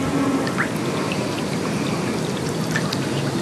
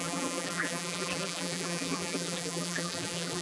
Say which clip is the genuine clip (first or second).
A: first